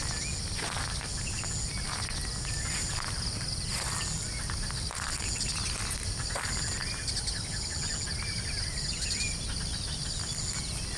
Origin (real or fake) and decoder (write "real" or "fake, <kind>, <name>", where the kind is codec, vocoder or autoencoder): real